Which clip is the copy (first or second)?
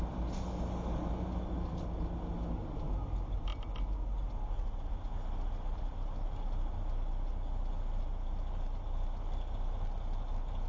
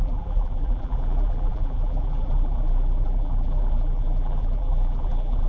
second